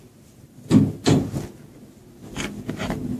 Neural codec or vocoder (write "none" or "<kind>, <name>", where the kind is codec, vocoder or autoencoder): none